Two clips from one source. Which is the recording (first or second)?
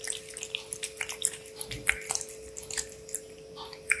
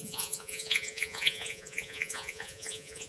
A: first